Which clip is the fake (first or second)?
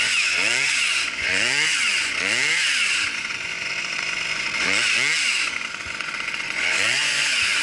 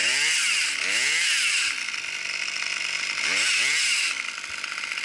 first